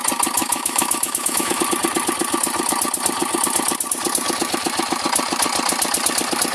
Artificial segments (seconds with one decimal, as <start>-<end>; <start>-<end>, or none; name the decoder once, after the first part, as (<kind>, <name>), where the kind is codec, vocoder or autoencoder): 0.4-1.6 (autoencoder, DAC-VAE)